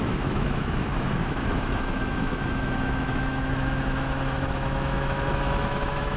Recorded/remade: remade